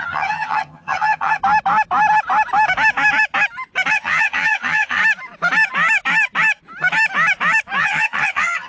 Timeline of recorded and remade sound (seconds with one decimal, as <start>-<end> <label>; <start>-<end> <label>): 0.0-1.4 remade; 1.4-3.9 recorded; 3.9-5.0 remade; 5.0-7.8 recorded; 7.8-8.7 remade